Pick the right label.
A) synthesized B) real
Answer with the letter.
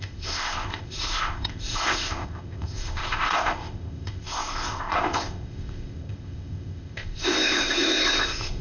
A